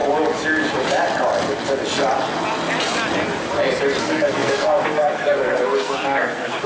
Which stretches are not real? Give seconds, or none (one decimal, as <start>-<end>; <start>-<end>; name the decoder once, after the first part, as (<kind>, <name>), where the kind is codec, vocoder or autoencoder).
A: 4.0-6.7 (codec, SNAC)